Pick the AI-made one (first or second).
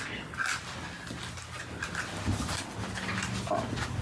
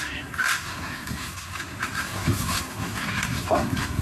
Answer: second